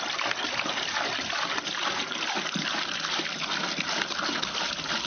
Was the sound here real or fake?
real